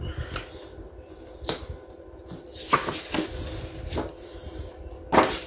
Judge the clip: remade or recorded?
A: recorded